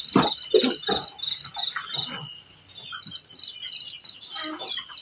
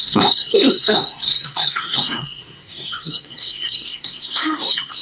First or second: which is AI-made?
second